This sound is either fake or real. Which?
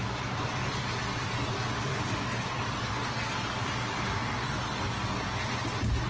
real